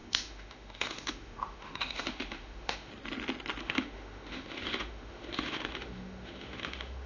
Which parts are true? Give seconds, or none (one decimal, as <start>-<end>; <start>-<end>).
2.9-3.6